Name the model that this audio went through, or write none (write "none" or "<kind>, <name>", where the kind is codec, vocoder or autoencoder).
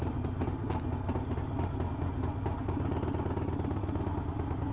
none